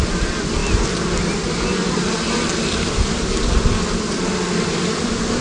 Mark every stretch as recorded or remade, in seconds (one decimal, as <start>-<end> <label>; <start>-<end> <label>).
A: 0.0-5.4 recorded